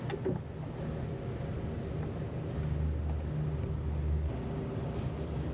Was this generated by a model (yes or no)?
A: no